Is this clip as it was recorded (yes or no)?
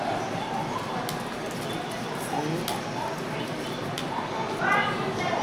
yes